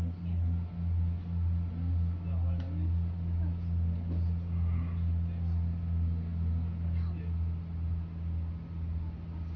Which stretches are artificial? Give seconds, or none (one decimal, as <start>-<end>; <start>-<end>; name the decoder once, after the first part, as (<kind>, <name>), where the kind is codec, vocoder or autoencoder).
none